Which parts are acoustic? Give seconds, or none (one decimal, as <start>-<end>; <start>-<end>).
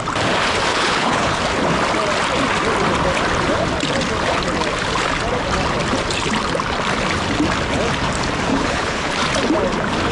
0.0-0.7; 1.4-8.5; 9.1-10.1